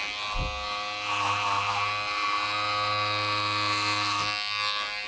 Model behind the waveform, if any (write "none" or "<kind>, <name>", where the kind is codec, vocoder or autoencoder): none